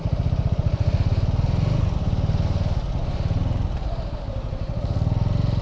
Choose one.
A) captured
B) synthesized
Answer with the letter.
A